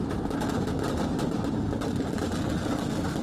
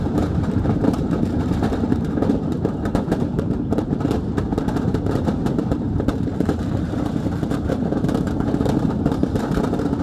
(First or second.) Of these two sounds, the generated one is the second